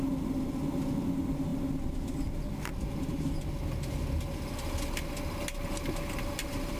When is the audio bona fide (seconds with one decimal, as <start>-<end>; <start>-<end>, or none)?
0.0-6.8